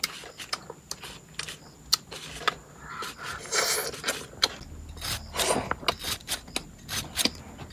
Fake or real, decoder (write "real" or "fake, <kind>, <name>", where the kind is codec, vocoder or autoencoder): real